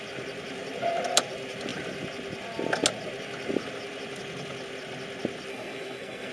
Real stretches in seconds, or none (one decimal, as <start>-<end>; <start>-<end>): 0.0-5.5